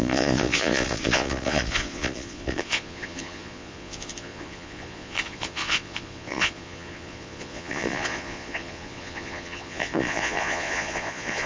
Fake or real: fake